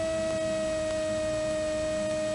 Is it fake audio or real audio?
real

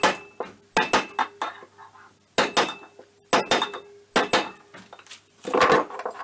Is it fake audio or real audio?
real